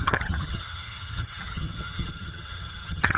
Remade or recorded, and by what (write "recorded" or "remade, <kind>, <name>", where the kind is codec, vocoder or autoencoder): remade, vocoder, HiFi-GAN